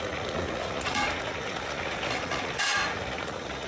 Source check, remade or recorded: remade